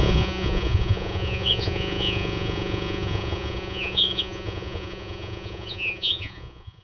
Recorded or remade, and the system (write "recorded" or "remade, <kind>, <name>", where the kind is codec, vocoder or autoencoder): remade, vocoder, Vocos